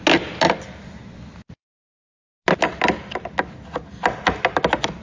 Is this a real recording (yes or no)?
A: yes